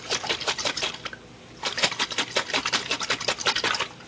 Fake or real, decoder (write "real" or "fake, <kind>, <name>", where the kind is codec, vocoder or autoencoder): real